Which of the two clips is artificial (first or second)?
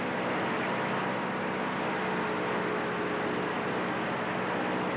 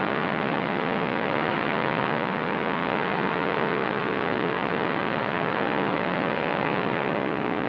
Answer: second